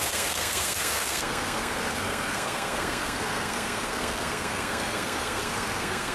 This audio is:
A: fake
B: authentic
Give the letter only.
A